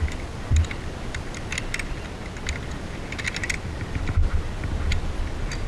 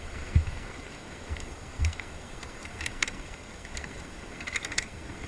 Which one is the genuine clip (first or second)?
first